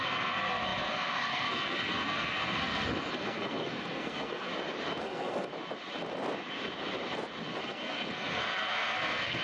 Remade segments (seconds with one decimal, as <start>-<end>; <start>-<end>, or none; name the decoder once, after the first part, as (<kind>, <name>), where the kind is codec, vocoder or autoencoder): 0.0-4.5 (codec, SNAC); 5.0-5.5; 7.6-9.4